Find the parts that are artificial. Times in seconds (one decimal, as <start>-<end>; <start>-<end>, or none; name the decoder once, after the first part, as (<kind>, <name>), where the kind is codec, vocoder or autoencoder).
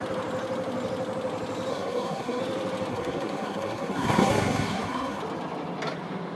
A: 1.7-2.4 (codec, SNAC); 2.9-5.2